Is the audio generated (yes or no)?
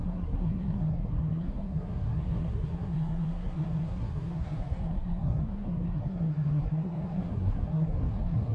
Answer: yes